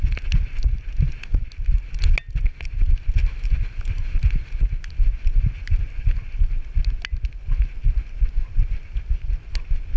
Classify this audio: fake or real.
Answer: real